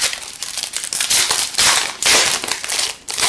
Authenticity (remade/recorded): recorded